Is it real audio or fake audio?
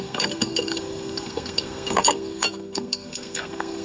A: fake